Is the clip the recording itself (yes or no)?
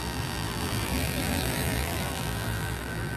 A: no